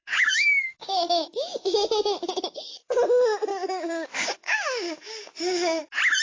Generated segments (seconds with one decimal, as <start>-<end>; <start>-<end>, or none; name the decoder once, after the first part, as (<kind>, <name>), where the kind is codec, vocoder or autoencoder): 0.0-3.0 (codec, DAC); 3.5-5.8